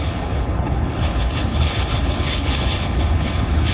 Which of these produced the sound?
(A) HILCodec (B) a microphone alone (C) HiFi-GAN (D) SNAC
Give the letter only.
A